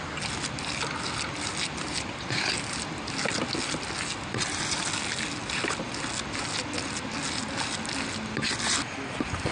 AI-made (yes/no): no